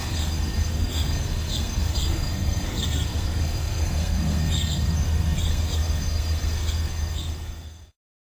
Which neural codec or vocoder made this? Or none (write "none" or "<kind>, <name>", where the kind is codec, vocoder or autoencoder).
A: codec, SNAC